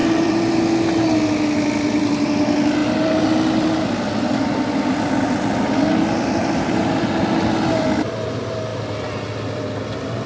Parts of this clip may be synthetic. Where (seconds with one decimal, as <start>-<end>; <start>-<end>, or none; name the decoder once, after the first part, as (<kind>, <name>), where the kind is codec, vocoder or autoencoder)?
0.0-0.6 (vocoder, BigVGAN v2); 2.8-3.8; 6.4-7.1; 8.7-9.6